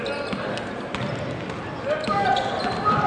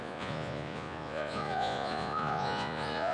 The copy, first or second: second